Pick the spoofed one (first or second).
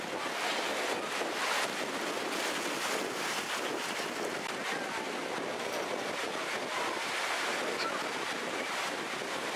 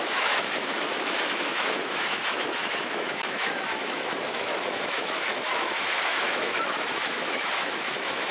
second